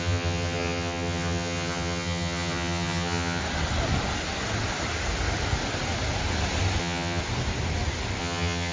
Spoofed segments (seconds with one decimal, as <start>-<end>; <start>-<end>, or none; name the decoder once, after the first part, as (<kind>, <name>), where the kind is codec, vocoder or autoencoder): 0.0-3.4 (vocoder, HiFi-GAN); 6.8-7.2; 8.2-8.7